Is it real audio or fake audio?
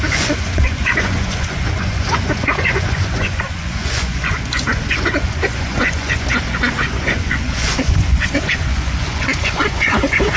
fake